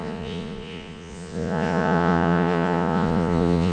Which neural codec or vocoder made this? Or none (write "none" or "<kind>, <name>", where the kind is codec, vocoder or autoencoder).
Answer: vocoder, Vocos